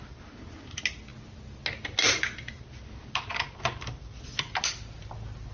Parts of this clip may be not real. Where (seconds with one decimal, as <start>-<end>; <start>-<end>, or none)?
none

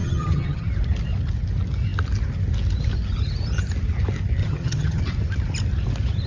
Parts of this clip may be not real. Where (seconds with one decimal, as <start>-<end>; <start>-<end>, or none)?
0.0-0.7; 4.4-5.0

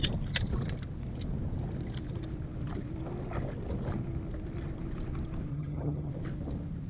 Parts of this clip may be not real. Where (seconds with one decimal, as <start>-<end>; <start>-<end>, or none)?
5.5-6.1

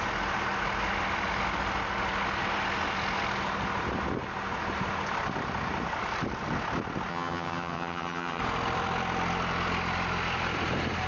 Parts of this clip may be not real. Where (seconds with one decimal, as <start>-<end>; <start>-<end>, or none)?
7.1-8.4

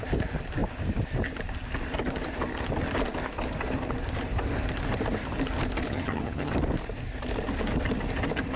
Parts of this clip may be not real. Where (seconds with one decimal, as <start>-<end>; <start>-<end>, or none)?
5.9-6.5

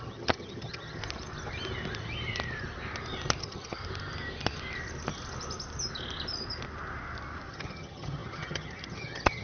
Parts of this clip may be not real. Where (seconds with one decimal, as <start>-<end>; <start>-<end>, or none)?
0.0-1.0; 3.4-3.8; 7.5-9.4